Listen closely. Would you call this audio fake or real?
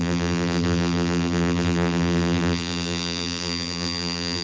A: fake